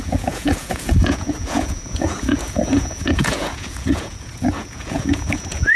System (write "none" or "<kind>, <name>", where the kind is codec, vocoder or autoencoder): vocoder, Vocos